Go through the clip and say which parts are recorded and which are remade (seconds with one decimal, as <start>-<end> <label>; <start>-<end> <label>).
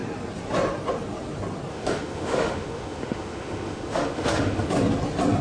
0.0-1.7 recorded; 1.7-4.7 remade; 4.7-5.4 recorded